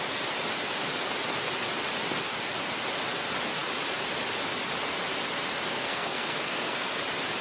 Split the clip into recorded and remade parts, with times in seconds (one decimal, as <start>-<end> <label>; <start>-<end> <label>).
0.0-5.7 recorded; 5.7-7.0 remade; 7.0-7.4 recorded